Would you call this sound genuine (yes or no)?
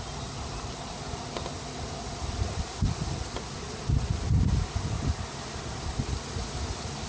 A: yes